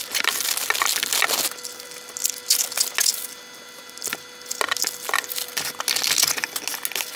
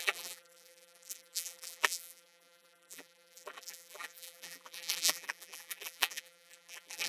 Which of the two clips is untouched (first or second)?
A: first